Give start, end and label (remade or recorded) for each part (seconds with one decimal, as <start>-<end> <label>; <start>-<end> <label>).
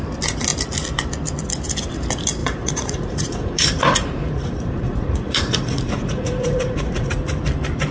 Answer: 0.0-2.4 recorded; 2.4-7.1 remade; 7.1-7.9 recorded